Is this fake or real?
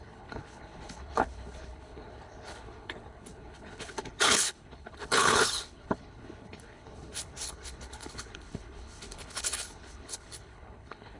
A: fake